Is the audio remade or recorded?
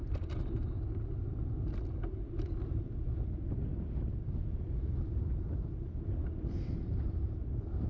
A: recorded